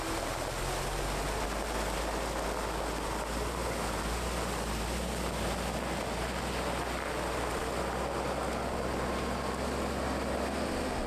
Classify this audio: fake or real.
real